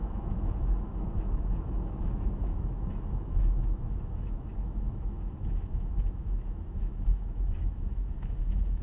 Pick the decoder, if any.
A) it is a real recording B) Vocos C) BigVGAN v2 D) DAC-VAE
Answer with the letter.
D